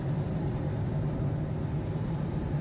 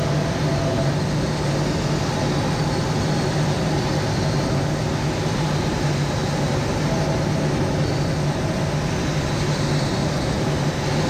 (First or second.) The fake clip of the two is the first